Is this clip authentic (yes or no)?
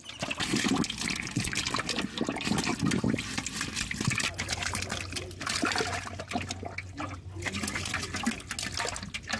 yes